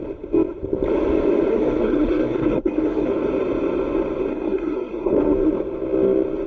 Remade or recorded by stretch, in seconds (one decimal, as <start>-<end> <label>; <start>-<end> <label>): 0.0-1.5 recorded; 1.5-3.1 remade; 3.1-4.3 recorded; 4.3-5.1 remade; 5.1-6.5 recorded